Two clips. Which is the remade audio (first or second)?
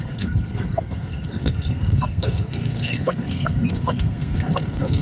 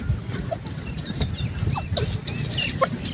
first